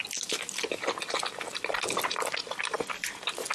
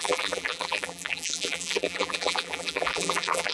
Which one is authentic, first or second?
first